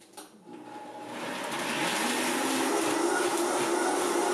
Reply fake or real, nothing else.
real